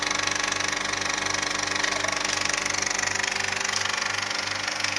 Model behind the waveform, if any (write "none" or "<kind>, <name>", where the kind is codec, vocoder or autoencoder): none